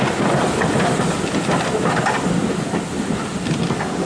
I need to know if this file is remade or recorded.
recorded